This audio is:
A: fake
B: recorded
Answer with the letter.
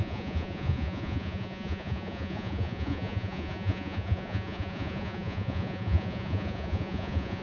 A